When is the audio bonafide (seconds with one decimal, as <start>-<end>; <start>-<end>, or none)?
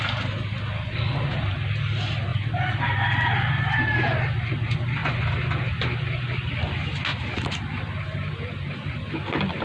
0.0-2.3; 4.2-7.1; 8.9-9.6